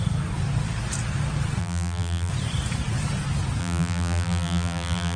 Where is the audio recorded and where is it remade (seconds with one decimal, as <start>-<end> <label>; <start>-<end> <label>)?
0.0-1.6 recorded; 1.6-2.3 remade; 2.3-3.6 recorded; 3.6-5.2 remade